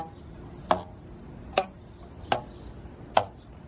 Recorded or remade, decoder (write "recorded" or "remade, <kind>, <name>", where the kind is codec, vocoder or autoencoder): recorded